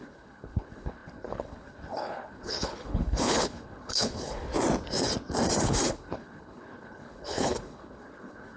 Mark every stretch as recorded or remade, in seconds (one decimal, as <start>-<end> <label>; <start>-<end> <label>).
0.0-4.5 remade; 4.5-5.6 recorded; 5.6-8.6 remade